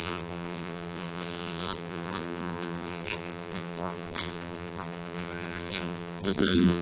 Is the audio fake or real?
fake